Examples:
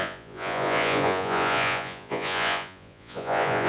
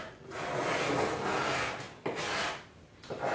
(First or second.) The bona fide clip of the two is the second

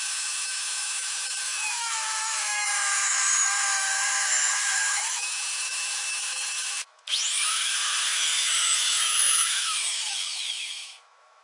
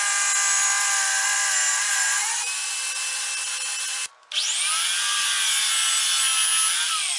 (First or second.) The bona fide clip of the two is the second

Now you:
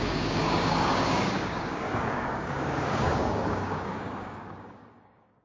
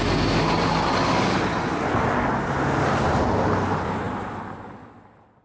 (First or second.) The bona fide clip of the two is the second